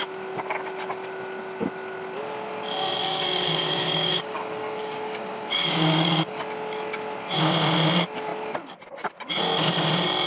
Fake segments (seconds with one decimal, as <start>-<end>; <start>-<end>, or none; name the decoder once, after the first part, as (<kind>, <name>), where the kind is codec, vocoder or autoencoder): 3.0-6.4 (codec, DAC)